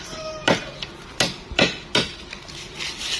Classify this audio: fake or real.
real